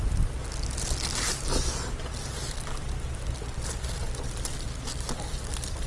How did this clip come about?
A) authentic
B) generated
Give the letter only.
A